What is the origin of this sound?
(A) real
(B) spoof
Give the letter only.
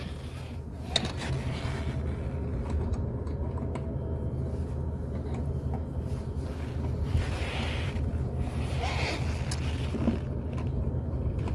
A